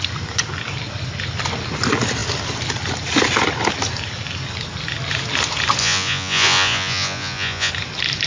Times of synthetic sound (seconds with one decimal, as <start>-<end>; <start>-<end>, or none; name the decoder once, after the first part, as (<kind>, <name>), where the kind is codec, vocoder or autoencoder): 5.8-7.7 (vocoder, Vocos)